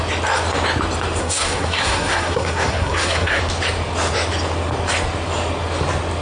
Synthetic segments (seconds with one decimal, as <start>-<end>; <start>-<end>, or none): 1.2-3.4